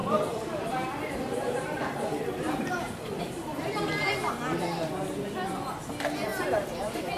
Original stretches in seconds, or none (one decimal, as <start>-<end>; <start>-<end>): 4.3-6.3

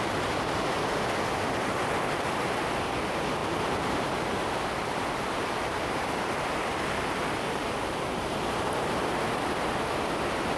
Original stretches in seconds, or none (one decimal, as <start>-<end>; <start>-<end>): 0.0-3.4; 8.3-10.6